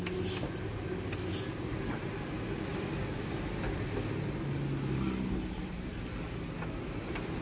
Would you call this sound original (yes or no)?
yes